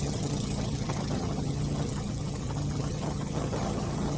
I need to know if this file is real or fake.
fake